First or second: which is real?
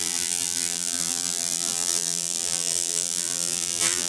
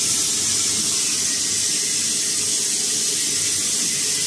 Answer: second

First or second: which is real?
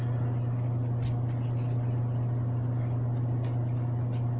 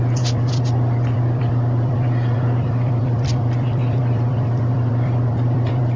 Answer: first